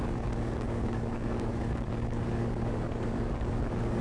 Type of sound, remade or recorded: remade